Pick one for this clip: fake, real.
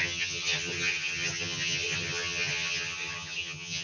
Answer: fake